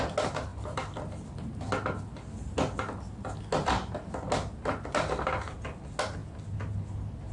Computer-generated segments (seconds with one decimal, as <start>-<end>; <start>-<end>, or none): none